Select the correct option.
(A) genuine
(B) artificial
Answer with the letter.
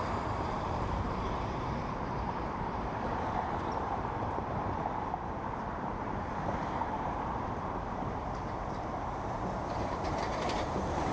B